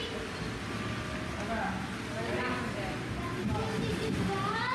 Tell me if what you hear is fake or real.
real